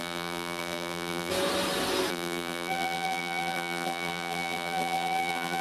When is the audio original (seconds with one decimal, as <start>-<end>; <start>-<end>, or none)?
1.3-2.1